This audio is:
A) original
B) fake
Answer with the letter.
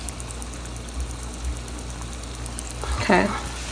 A